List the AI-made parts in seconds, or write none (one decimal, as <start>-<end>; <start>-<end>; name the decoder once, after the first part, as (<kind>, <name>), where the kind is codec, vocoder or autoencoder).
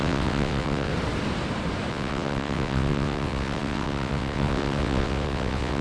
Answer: 0.0-0.9 (vocoder, WaveNeXt); 1.9-5.8